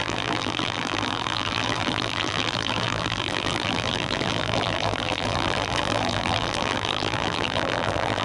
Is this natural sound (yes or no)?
no